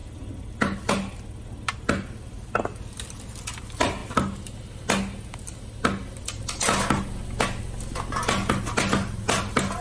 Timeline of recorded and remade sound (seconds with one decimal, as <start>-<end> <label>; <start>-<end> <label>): 0.0-9.8 recorded